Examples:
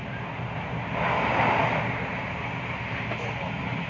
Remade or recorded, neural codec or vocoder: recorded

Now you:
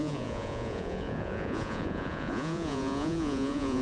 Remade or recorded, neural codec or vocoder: remade, vocoder, Vocos